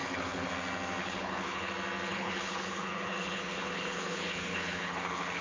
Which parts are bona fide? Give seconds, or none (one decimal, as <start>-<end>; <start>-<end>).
0.5-1.0; 1.7-2.1